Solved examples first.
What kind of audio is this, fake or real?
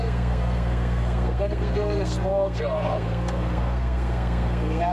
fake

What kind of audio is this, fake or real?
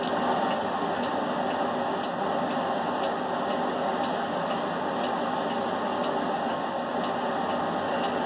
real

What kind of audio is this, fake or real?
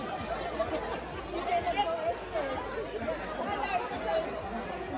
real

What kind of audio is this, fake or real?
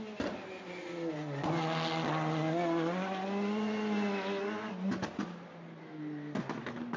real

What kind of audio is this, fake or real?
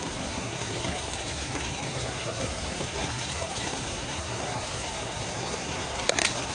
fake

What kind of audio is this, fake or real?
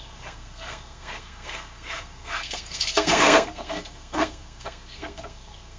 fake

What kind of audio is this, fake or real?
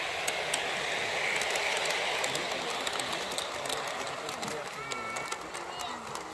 real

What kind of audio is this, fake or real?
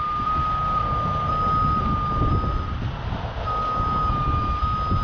real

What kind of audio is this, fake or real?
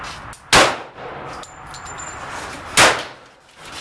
real